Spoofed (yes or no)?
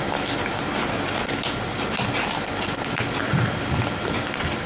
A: no